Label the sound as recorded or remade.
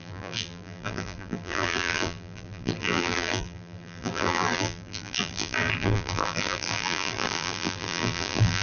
remade